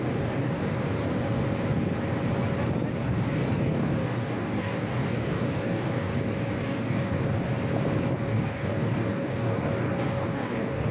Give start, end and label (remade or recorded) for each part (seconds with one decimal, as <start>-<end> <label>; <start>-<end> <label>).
0.0-1.0 remade; 1.0-3.0 recorded; 3.0-6.1 remade; 6.1-6.6 recorded; 6.6-7.5 remade; 7.5-8.2 recorded; 8.2-10.9 remade